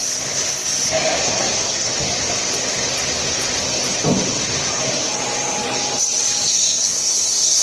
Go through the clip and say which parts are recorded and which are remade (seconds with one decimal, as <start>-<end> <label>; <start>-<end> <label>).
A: 0.0-1.2 recorded; 1.2-1.9 remade; 1.9-6.5 recorded; 6.5-7.6 remade